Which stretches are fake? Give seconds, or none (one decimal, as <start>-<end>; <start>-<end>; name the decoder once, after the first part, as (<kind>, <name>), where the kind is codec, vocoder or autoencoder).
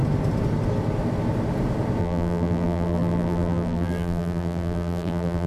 2.0-5.5 (vocoder, BigVGAN v2)